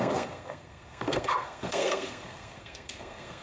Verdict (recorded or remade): remade